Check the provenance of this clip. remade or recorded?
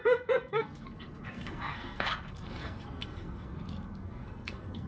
remade